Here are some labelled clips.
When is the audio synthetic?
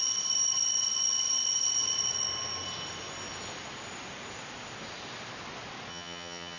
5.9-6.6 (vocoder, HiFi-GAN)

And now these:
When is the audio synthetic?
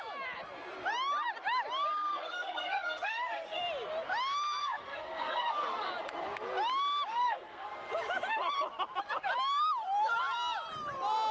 2.1-3.6 (codec, SNAC); 4.6-5.9; 7.1-7.9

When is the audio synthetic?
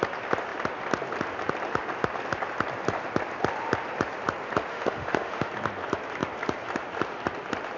4.7-5.5 (autoencoder, DAC-VAE)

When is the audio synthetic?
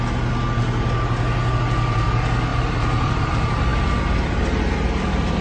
2.5-3.3 (vocoder, BigVGAN v2)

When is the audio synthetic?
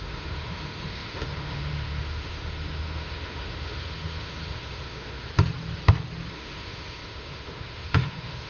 0.0-5.3 (autoencoder, DAC-VAE); 6.3-8.5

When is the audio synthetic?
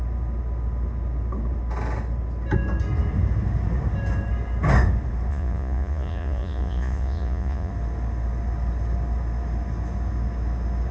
5.3-7.7 (vocoder, Vocos)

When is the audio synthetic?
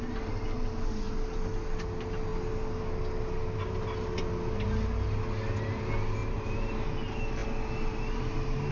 6.2-6.7 (vocoder, BigVGAN v2)